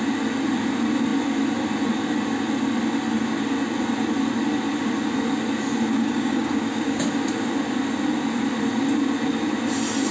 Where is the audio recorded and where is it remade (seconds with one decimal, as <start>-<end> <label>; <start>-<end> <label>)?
0.0-6.0 recorded; 6.0-7.0 remade; 7.0-10.1 recorded